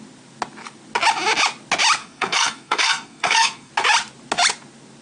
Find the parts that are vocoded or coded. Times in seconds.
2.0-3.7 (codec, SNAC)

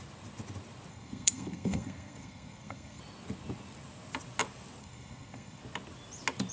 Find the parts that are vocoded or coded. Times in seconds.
0.9-3.0 (codec, SNAC); 4.8-5.6

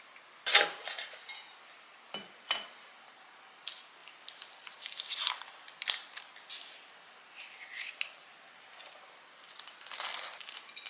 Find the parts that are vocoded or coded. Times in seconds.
none

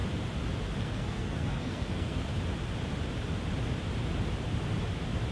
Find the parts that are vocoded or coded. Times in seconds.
0.8-2.3 (codec, SNAC)